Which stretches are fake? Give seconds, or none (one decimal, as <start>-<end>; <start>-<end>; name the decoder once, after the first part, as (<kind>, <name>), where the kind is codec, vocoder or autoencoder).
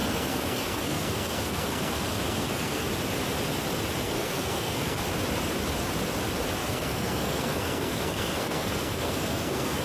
0.0-2.9 (codec, SNAC); 4.0-5.0; 6.6-9.8